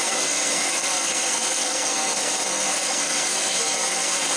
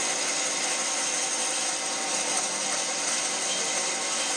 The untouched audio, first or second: second